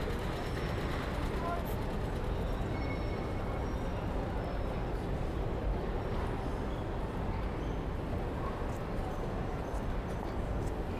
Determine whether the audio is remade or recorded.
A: recorded